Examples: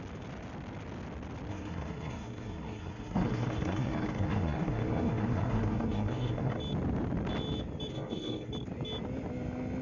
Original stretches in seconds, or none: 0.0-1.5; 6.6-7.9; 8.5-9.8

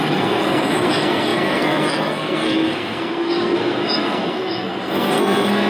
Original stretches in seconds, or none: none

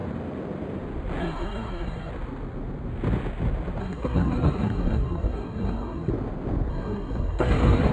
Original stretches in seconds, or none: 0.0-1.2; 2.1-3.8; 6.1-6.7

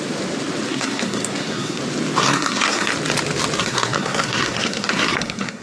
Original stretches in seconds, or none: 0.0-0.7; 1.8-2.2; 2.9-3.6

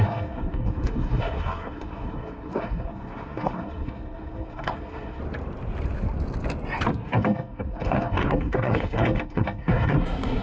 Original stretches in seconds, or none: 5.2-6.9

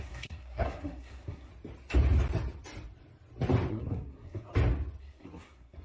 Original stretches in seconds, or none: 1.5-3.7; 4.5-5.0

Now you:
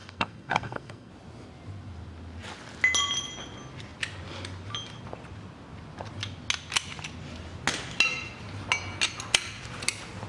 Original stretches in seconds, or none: 1.1-10.3